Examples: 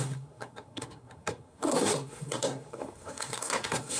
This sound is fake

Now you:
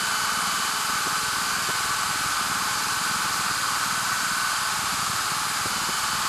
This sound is real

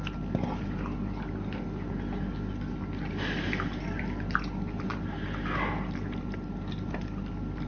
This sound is real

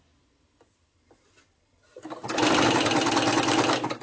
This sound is real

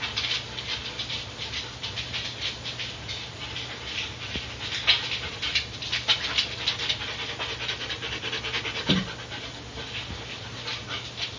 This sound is real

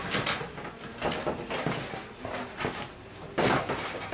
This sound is real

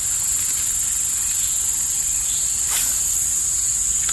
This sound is real